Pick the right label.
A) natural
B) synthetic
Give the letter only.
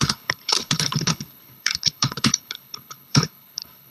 B